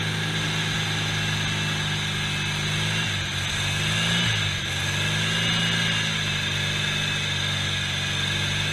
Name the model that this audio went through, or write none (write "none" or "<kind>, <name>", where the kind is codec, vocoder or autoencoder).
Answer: none